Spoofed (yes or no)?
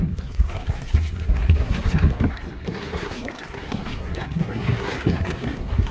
yes